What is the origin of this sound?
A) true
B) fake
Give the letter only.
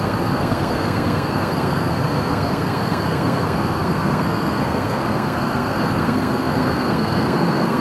B